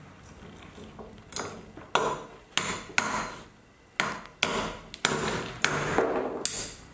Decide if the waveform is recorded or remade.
recorded